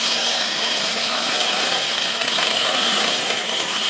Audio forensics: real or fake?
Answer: fake